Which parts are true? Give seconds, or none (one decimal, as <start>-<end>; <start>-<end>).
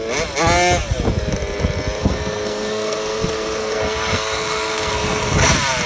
0.0-2.0; 5.5-5.9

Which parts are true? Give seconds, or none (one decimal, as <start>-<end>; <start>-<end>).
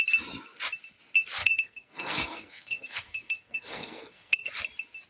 0.0-1.4; 4.5-5.1